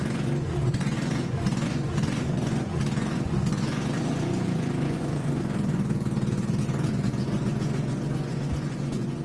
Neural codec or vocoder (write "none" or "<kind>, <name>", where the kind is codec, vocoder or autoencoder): vocoder, Vocos